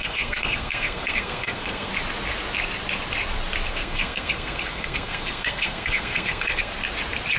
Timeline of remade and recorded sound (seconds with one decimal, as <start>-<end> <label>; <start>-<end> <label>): 0.0-1.9 remade; 1.9-3.7 recorded; 3.7-6.7 remade; 6.7-7.4 recorded